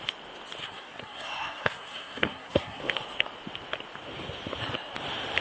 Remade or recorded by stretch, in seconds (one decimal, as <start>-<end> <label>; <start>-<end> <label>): 0.0-0.6 recorded; 0.6-2.8 remade; 2.8-5.4 recorded